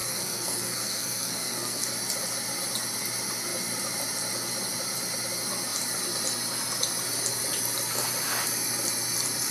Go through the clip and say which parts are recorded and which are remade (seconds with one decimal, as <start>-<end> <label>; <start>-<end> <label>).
0.0-1.9 remade; 1.9-9.5 recorded